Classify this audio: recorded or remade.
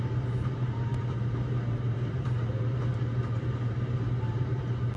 remade